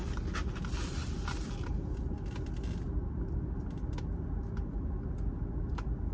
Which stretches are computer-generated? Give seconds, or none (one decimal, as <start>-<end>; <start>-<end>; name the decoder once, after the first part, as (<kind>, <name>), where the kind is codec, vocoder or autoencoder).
none